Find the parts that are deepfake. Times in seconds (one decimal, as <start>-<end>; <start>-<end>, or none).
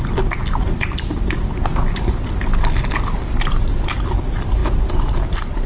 0.0-1.7; 3.1-4.6; 5.2-5.7